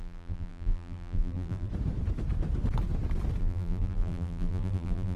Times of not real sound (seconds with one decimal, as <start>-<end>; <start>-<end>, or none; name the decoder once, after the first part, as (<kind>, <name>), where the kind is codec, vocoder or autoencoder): 0.0-1.7 (vocoder, BigVGAN v2); 3.4-5.2